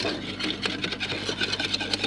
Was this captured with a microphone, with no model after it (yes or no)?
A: yes